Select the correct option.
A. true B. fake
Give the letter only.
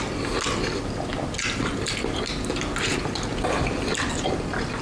A